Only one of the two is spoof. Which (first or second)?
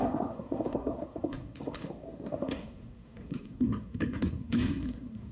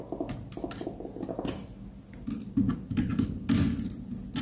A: first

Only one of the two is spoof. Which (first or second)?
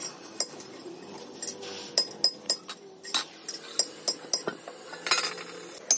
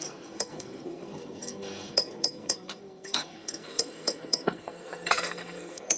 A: second